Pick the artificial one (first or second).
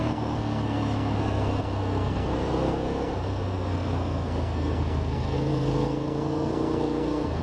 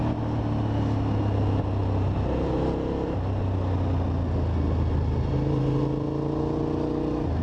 first